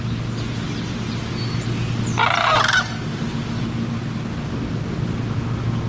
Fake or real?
real